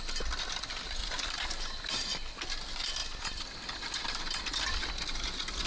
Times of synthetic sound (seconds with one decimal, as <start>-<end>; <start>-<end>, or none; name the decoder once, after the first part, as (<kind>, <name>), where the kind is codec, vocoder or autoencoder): 1.0-1.6 (vocoder, BigVGAN v2)